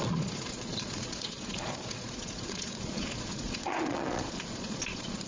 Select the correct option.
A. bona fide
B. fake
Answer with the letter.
B